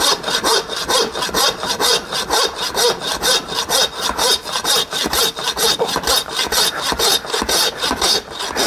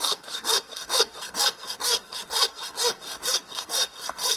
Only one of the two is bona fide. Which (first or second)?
first